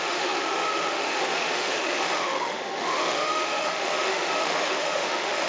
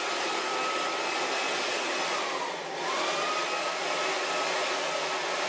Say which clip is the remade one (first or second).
first